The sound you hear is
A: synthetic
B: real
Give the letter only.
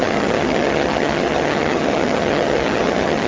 A